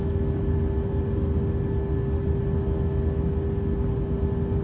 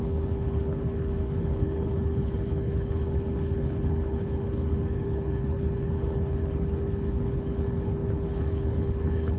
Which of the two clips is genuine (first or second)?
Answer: first